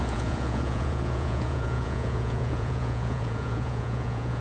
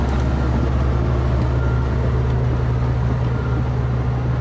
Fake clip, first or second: first